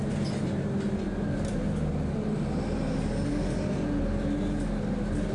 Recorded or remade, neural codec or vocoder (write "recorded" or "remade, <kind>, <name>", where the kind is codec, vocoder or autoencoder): recorded